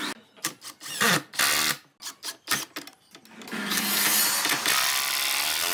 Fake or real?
real